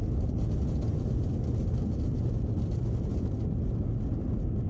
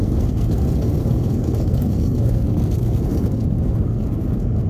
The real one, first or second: first